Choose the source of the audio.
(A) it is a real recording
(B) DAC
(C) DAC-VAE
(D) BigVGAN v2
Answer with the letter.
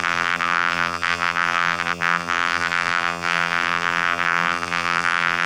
D